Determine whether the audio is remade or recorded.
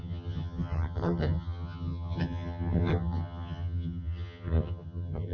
remade